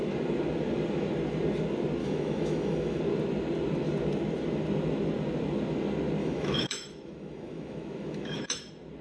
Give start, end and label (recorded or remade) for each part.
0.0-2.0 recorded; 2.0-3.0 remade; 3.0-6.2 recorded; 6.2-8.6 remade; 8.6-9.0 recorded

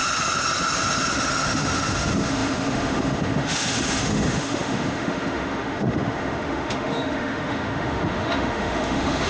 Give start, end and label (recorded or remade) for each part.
0.0-1.1 recorded; 1.1-9.3 remade

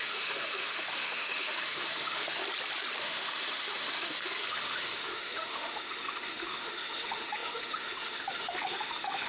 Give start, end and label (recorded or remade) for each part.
0.0-2.4 remade; 2.4-3.0 recorded; 3.0-9.3 remade